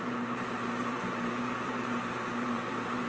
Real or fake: fake